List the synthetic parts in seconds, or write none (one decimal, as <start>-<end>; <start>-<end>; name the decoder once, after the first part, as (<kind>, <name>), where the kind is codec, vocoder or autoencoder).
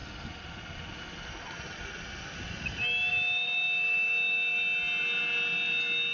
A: none